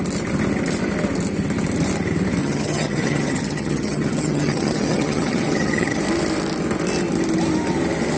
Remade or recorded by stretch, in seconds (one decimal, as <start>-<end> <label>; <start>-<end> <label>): 0.0-2.4 recorded; 2.4-6.0 remade; 6.0-8.2 recorded